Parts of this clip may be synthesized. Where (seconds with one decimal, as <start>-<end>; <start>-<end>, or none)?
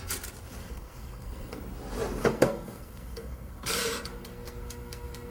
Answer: 0.6-1.6; 2.2-5.3